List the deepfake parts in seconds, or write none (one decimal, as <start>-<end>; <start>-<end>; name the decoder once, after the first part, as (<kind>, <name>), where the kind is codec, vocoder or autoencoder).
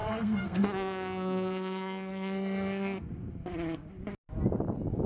0.0-3.1 (codec, SNAC)